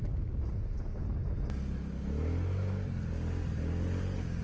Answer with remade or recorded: recorded